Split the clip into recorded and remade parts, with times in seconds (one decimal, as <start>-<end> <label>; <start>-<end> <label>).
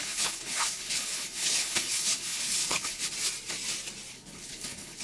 0.0-3.0 remade; 3.0-4.1 recorded; 4.1-5.0 remade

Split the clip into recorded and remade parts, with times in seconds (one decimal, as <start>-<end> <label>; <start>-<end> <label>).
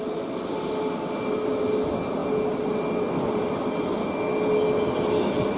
0.0-5.6 recorded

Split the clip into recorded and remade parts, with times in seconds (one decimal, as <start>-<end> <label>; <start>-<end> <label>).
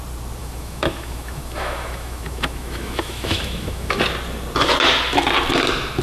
0.0-0.4 recorded; 0.4-4.0 remade; 4.0-6.0 recorded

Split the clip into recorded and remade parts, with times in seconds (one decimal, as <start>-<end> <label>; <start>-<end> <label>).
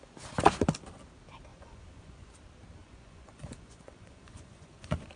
0.0-1.5 recorded; 1.5-2.3 remade; 2.3-2.8 recorded; 2.8-5.2 remade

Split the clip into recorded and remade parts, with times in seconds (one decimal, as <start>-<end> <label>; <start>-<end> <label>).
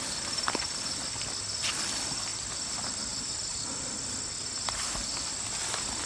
0.0-6.1 recorded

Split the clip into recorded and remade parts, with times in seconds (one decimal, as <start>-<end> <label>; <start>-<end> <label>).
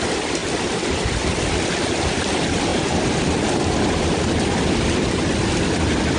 0.0-6.2 recorded